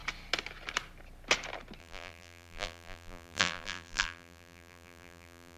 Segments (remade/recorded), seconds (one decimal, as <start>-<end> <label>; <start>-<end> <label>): 0.0-1.8 recorded; 1.8-5.6 remade